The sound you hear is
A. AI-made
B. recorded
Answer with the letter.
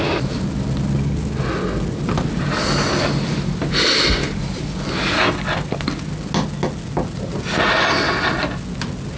B